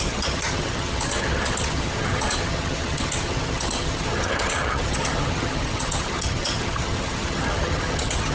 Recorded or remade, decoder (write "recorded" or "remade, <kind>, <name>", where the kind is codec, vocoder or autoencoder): remade, vocoder, HiFi-GAN